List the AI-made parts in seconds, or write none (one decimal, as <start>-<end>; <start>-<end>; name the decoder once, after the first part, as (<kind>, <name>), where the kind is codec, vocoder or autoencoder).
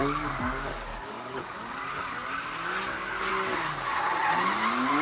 0.0-1.4 (codec, DAC)